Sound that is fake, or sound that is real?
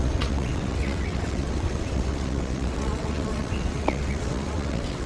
fake